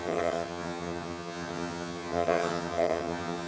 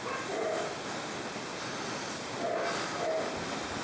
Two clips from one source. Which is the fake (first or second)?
first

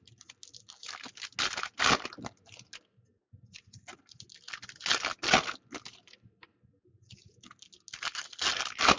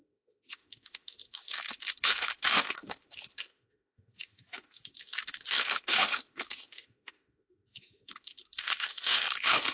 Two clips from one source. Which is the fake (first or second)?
second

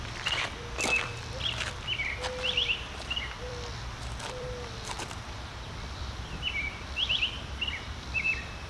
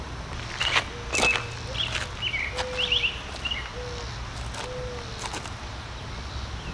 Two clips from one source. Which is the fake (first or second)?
first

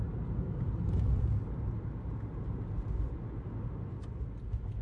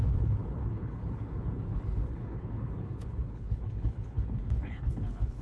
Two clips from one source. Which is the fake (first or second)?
second